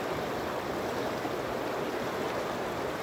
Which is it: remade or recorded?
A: recorded